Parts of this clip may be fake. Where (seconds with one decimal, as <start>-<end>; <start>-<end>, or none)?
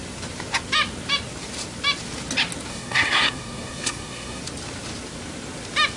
2.7-4.4